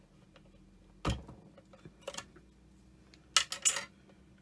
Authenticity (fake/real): real